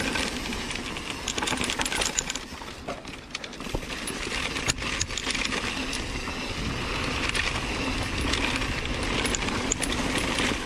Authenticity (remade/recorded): recorded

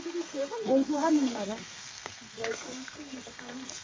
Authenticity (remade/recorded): remade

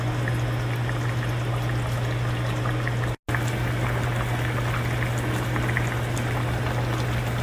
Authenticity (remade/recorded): recorded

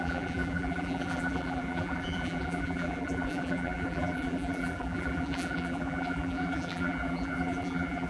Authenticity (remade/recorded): remade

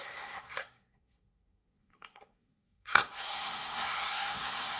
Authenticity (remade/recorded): remade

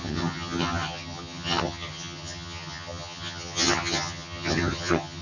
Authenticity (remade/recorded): remade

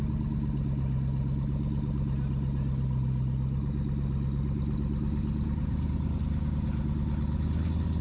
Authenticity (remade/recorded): recorded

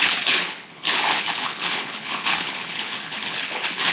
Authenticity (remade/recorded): remade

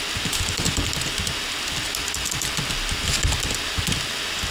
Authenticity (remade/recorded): recorded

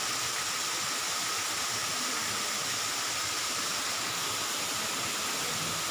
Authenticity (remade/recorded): recorded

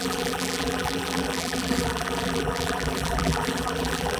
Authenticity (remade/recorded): remade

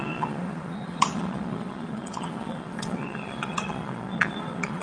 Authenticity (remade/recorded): remade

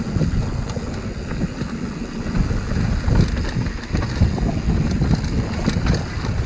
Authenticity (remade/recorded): recorded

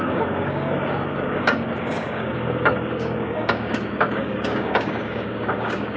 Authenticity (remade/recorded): remade